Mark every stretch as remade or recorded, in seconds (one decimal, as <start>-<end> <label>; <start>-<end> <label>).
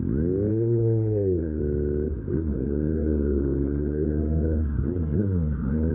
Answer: 0.0-0.5 recorded; 0.5-1.6 remade; 1.6-2.3 recorded; 2.3-5.9 remade